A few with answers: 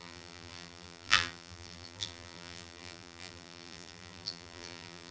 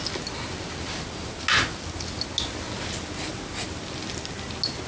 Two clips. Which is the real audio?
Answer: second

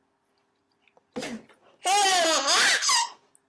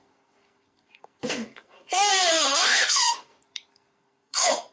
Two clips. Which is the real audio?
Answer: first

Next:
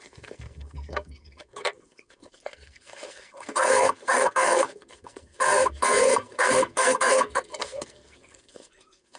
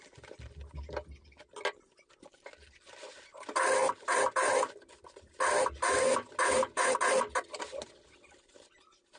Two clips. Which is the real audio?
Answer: second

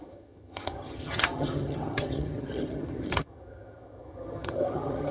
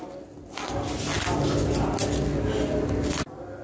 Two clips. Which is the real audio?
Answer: second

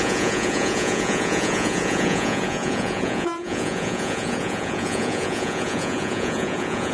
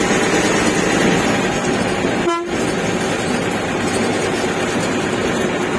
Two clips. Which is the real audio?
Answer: second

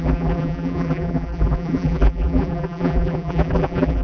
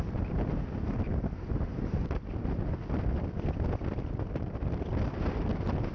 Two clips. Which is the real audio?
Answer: second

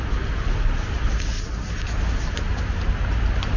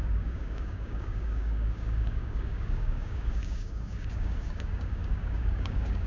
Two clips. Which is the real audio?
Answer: first